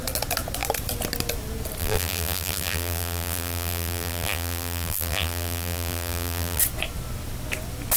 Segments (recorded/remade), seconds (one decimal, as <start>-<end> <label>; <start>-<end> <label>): 0.0-1.8 recorded; 1.8-6.6 remade; 6.6-8.0 recorded